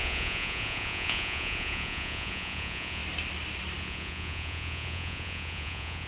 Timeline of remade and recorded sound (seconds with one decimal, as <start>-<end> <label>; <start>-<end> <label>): 0.0-3.0 remade; 3.0-3.8 recorded; 3.8-6.1 remade

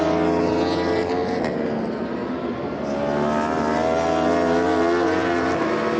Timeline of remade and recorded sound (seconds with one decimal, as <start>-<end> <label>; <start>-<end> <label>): 0.0-6.0 recorded

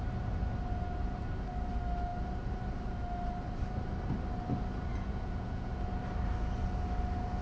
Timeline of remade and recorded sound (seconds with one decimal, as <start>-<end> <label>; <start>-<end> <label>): 0.0-4.9 recorded; 4.9-5.7 remade; 5.7-7.4 recorded